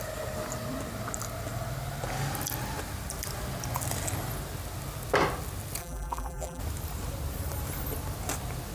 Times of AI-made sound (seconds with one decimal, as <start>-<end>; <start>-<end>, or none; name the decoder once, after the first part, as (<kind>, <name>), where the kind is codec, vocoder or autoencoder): 5.8-6.6 (vocoder, BigVGAN v2)